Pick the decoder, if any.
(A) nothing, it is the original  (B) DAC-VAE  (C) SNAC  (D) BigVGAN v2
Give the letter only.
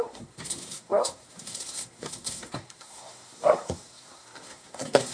C